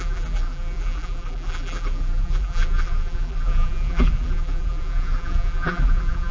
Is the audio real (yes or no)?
no